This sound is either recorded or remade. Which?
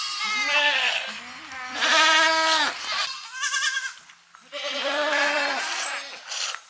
recorded